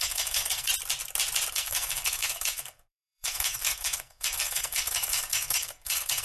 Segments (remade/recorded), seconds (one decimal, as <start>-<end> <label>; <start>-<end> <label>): 0.0-0.7 remade; 0.7-1.5 recorded; 1.5-6.2 remade